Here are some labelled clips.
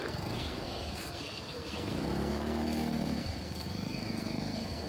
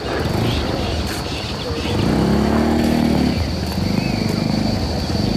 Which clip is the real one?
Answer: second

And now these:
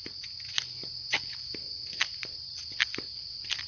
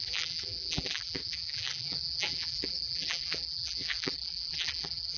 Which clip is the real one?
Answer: first